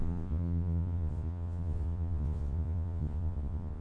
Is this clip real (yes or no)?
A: no